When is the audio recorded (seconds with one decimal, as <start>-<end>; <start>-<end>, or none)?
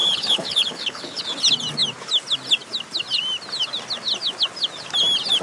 1.2-5.4